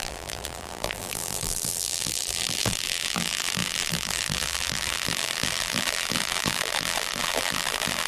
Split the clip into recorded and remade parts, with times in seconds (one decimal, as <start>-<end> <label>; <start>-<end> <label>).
0.0-8.1 remade